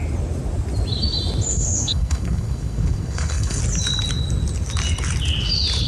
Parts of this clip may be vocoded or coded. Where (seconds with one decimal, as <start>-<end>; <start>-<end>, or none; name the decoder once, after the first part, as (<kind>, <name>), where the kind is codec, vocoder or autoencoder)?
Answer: 1.5-3.6 (codec, SNAC)